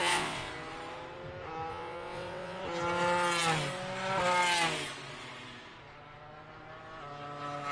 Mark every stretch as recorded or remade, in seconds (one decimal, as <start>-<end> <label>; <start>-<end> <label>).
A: 0.0-0.5 remade; 0.5-1.7 recorded; 1.7-2.6 remade; 2.6-7.7 recorded